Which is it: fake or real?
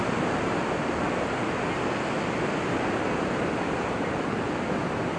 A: real